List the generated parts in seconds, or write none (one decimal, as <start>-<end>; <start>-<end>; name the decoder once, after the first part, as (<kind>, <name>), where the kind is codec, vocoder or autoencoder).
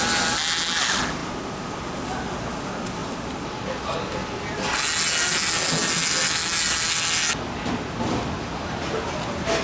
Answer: none